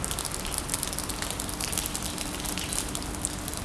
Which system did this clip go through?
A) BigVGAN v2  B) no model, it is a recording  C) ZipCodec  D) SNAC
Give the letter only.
B